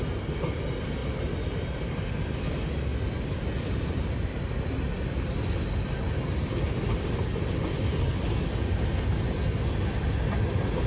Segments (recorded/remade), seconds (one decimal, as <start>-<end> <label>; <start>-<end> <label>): 0.0-1.0 recorded; 1.0-2.3 remade; 2.3-10.9 recorded